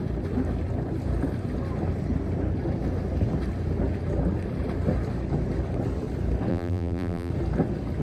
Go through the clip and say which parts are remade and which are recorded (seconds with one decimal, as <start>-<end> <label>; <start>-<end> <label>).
0.0-6.5 recorded; 6.5-7.3 remade; 7.3-8.0 recorded